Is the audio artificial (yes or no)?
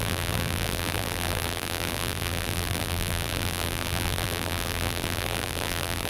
yes